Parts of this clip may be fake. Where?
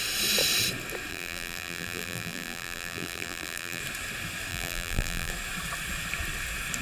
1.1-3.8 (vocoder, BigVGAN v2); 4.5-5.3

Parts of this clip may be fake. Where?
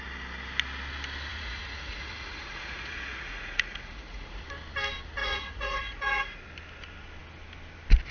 1.3-4.4 (vocoder, Vocos); 5.2-6.4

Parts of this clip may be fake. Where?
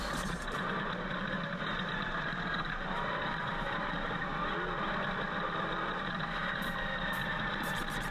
0.0-4.3 (vocoder, BigVGAN v2); 5.6-8.1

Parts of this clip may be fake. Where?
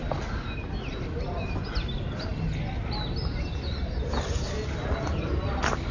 none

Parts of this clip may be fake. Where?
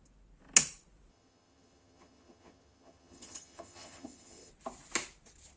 1.1-4.5 (vocoder, HiFi-GAN)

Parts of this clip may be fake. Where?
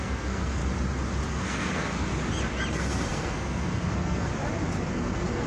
0.0-0.6 (codec, SNAC); 1.3-2.1; 2.7-4.3; 4.9-5.5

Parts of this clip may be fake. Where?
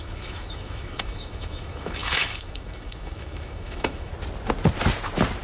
0.0-4.1 (autoencoder, DAC-VAE)